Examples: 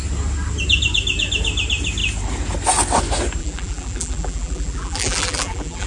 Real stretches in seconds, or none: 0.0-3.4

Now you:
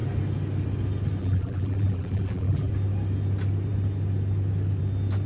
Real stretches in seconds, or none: 0.0-1.2; 2.7-5.3

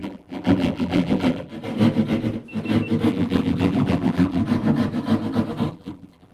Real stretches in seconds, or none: 1.5-3.1; 4.4-5.7

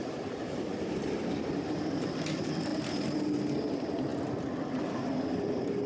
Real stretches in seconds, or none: 2.7-3.6; 4.1-5.1

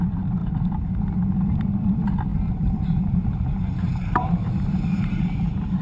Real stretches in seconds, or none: 0.0-2.3

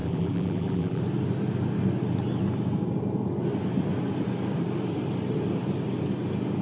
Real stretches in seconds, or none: 1.0-6.6

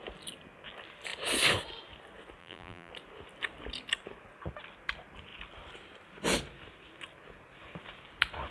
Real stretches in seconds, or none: 0.0-2.4; 2.9-8.5

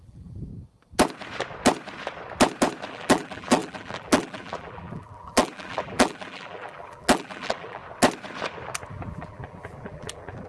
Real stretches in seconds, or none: 0.5-2.9; 7.8-8.9